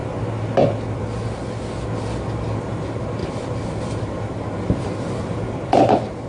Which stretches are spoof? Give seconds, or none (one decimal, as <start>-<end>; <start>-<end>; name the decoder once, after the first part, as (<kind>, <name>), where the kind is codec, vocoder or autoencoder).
3.2-4.4 (vocoder, BigVGAN v2)